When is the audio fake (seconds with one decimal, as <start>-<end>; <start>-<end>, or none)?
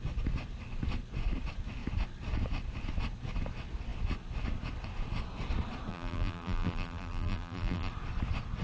5.9-7.9